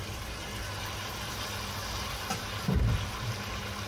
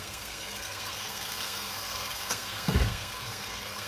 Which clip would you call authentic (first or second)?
first